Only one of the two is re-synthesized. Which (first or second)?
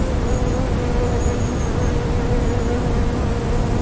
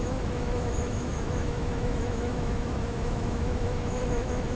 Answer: second